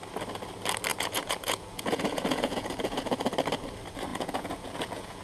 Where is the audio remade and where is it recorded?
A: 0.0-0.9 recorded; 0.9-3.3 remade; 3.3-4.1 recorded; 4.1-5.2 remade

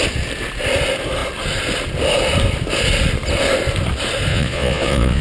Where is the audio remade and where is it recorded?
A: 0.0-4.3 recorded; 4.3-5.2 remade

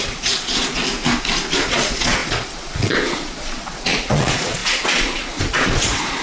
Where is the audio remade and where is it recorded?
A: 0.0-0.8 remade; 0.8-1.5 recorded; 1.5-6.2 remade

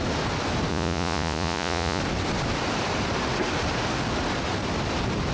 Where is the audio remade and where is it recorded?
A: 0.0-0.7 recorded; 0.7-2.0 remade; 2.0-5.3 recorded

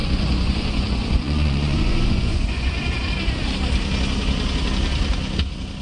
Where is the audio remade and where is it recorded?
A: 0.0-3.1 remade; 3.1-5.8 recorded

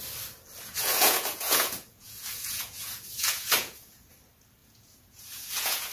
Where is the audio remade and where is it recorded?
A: 0.0-0.6 recorded; 0.6-4.1 remade; 4.1-4.6 recorded; 4.6-5.9 remade

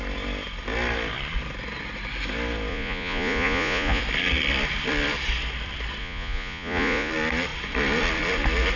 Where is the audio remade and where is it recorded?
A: 0.0-2.7 recorded; 2.7-4.0 remade; 4.0-6.0 recorded; 6.0-7.1 remade; 7.1-8.8 recorded